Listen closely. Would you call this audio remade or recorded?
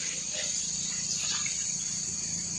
recorded